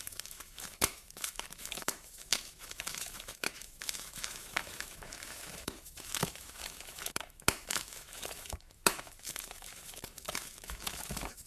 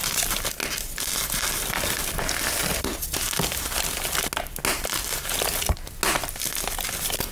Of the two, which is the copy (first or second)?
first